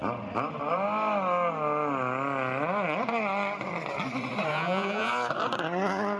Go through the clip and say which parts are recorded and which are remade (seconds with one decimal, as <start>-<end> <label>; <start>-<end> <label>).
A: 0.0-4.5 recorded; 4.5-5.1 remade; 5.1-6.2 recorded